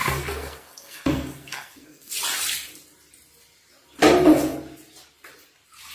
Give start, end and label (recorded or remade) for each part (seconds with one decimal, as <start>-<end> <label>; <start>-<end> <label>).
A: 0.0-2.1 remade; 2.1-5.9 recorded